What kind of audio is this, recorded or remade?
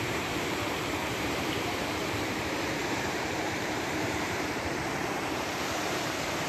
remade